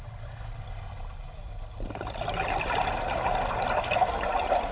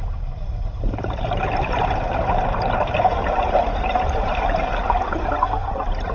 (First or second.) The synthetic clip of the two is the second